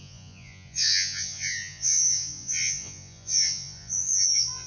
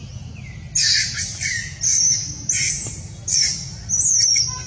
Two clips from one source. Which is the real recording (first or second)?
second